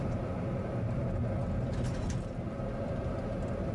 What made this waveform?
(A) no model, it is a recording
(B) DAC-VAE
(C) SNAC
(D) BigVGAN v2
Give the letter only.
A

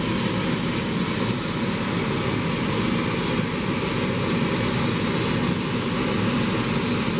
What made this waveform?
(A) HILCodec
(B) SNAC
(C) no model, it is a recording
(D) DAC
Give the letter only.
C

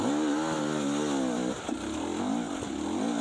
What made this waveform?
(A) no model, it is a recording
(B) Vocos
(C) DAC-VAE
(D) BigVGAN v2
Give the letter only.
A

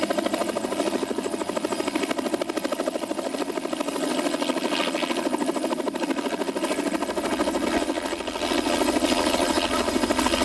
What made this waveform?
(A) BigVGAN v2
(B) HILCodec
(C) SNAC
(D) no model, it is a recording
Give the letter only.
D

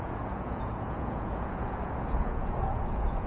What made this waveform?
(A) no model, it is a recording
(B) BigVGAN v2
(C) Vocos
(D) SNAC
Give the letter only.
C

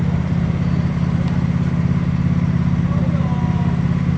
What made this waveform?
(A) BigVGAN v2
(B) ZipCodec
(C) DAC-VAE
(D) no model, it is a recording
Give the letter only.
D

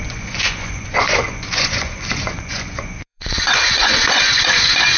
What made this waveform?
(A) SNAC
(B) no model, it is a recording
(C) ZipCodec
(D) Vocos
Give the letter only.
D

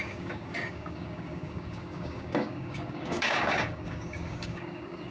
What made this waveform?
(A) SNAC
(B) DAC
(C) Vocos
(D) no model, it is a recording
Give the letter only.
B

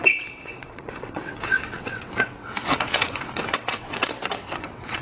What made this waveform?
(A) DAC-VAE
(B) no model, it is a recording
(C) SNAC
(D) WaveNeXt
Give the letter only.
D